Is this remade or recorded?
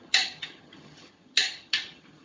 remade